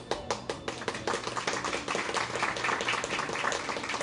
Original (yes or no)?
yes